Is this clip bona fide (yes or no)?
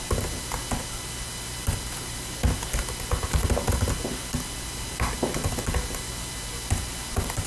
yes